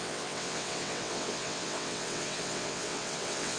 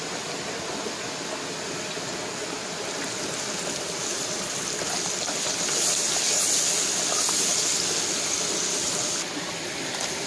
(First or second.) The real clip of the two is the second